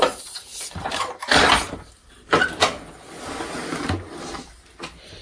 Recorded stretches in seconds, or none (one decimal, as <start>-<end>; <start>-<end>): 2.4-5.2